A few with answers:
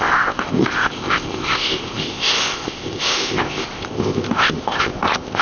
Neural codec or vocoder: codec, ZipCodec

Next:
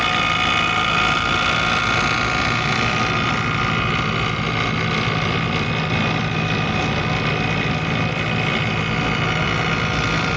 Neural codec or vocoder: none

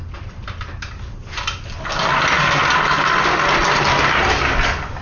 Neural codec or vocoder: none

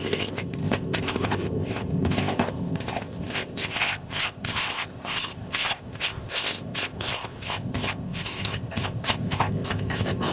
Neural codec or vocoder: codec, ZipCodec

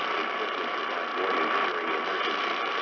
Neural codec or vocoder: none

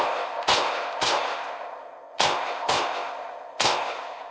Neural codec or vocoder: codec, ZipCodec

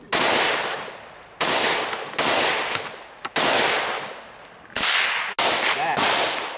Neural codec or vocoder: none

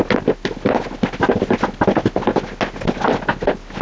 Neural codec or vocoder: none